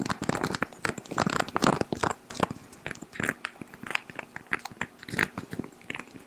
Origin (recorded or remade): recorded